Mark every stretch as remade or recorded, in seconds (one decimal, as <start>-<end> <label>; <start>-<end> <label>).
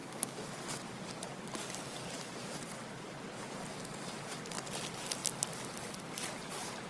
0.0-0.6 remade; 0.6-6.9 recorded